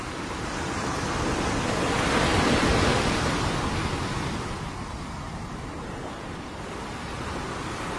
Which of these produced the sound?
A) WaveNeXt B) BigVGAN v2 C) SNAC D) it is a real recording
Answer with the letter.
D